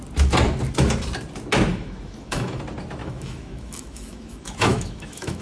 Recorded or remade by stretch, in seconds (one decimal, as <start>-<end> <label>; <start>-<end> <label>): 0.0-1.7 recorded; 1.7-2.6 remade; 2.6-3.0 recorded; 3.0-5.4 remade